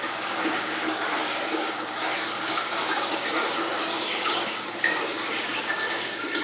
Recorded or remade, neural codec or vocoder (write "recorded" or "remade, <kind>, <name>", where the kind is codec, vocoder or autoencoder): remade, codec, DAC